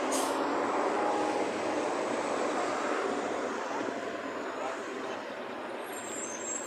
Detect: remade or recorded recorded